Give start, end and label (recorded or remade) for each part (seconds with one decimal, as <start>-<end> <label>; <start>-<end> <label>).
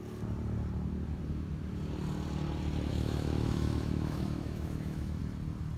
0.0-2.9 recorded; 2.9-5.2 remade; 5.2-5.8 recorded